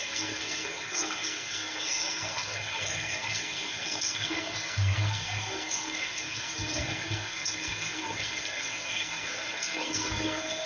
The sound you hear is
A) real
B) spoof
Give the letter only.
B